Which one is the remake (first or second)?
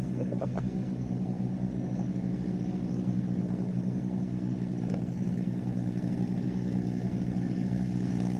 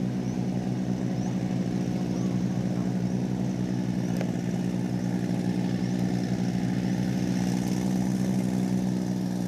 first